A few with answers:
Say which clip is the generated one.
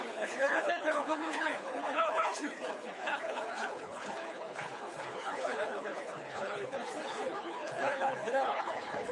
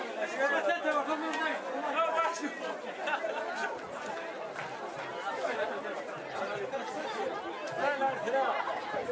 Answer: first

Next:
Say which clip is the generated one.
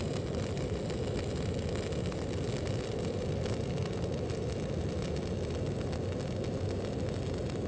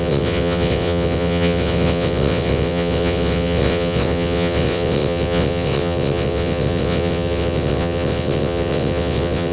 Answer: second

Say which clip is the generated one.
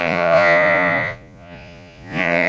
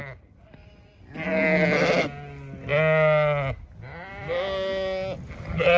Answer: first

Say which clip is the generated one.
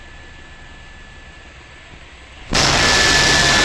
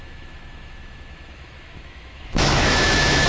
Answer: second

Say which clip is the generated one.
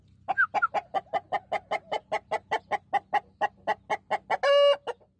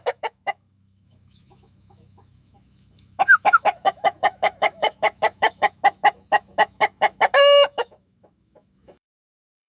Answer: second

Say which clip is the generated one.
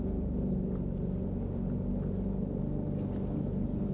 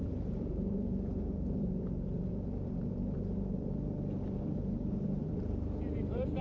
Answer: second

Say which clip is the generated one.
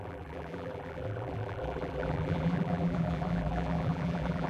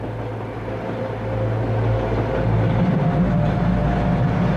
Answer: first